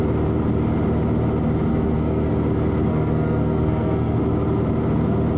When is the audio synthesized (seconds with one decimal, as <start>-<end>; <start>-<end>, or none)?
1.7-2.3; 2.9-4.2